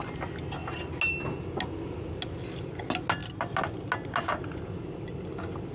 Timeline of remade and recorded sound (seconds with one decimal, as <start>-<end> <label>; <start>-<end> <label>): 0.0-5.7 recorded